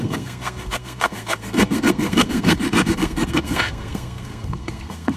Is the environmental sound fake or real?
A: fake